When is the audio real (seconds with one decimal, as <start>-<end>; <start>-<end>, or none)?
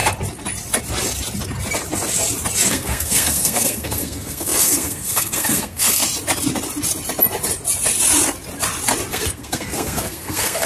0.0-2.7; 6.0-9.1